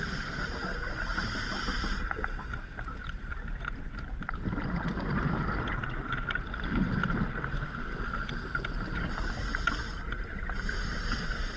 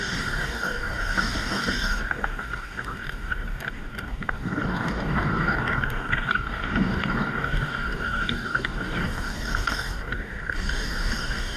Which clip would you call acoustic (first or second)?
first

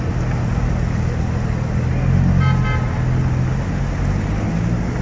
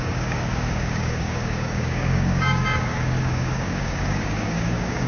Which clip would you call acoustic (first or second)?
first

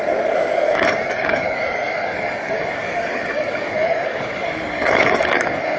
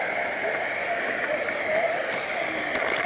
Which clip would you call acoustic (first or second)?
second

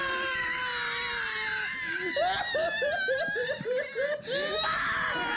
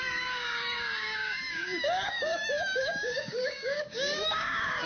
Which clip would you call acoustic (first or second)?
first